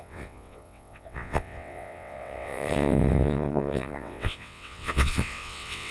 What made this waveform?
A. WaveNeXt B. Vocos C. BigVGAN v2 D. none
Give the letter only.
A